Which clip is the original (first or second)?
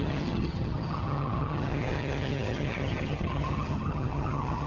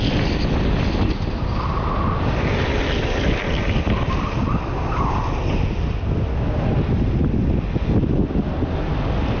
second